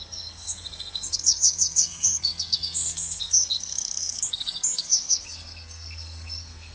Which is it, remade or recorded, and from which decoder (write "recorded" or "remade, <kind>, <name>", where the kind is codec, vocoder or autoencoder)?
remade, codec, SNAC